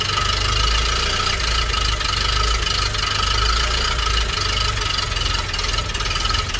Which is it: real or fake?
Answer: real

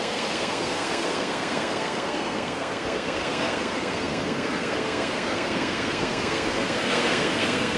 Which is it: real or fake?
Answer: fake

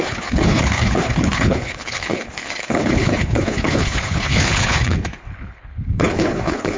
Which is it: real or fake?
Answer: fake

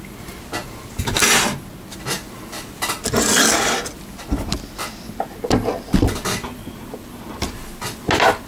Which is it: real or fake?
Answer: real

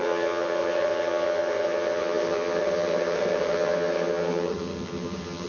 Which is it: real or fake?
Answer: fake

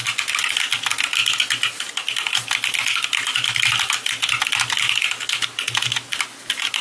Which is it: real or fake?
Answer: real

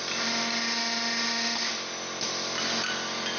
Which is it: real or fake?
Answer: real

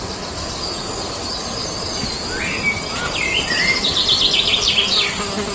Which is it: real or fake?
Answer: real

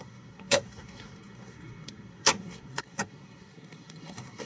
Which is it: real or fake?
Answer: fake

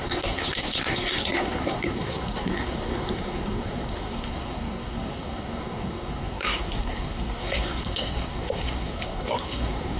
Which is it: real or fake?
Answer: fake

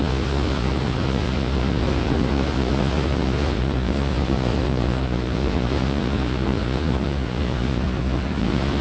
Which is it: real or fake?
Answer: fake